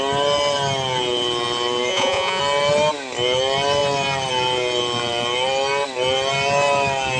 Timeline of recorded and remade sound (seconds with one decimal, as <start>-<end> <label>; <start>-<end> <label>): 0.0-1.9 recorded; 1.9-2.4 remade; 2.4-7.2 recorded